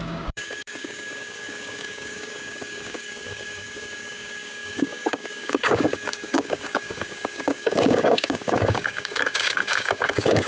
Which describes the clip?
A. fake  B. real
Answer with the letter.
A